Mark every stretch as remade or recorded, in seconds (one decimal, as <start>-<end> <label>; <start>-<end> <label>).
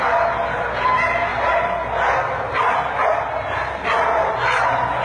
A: 0.0-5.0 recorded